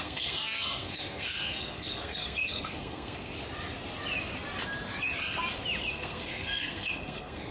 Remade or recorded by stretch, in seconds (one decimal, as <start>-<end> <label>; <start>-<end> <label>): 0.0-3.3 remade; 3.3-5.9 recorded; 5.9-7.5 remade